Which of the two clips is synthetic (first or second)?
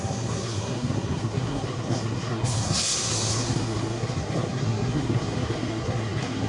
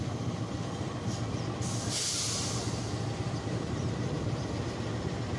first